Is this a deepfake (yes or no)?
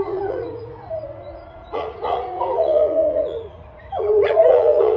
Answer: yes